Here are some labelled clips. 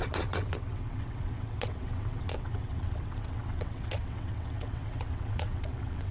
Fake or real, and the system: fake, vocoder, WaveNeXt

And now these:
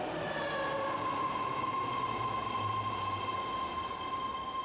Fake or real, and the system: real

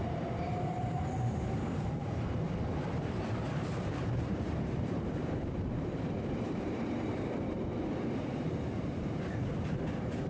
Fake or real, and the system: fake, vocoder, BigVGAN v2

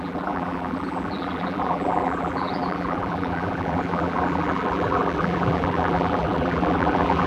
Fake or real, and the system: fake, vocoder, BigVGAN v2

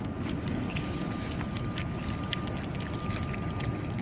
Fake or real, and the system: real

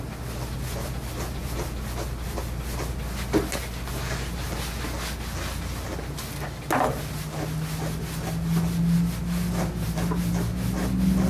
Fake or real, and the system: real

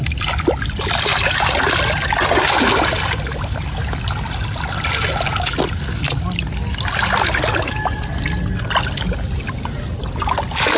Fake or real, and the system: real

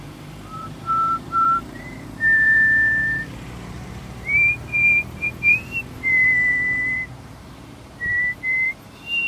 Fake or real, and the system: fake, vocoder, BigVGAN v2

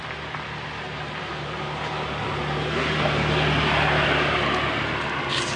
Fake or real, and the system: real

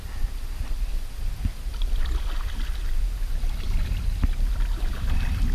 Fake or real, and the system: real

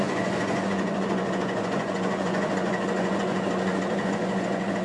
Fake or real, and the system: fake, vocoder, Vocos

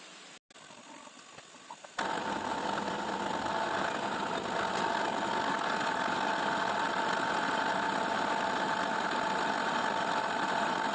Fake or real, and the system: real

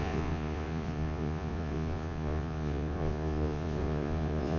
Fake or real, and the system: fake, vocoder, Vocos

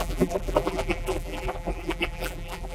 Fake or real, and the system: fake, vocoder, BigVGAN v2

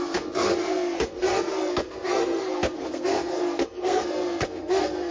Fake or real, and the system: fake, codec, SNAC